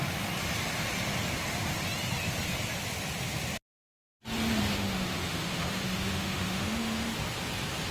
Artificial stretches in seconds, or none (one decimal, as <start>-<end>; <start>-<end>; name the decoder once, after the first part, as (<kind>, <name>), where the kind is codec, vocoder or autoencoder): 4.8-7.1 (autoencoder, DAC-VAE)